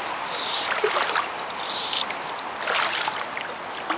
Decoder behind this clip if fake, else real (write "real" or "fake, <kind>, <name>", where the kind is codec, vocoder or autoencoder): real